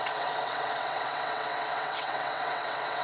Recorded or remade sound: remade